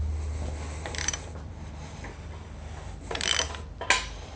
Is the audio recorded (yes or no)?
yes